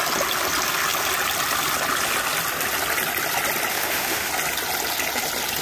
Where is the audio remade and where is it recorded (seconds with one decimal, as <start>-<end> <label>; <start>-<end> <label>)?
0.0-3.7 recorded; 3.7-4.3 remade; 4.3-5.6 recorded